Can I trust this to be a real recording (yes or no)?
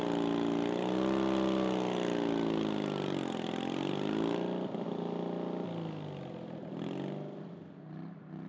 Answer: yes